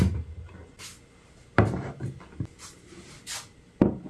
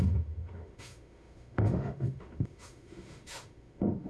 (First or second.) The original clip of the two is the first